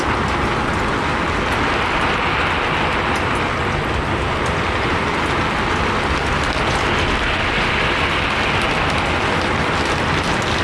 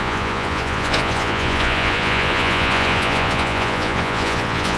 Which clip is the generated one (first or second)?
second